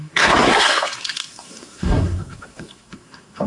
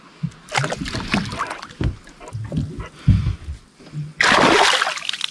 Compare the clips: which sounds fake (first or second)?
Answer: first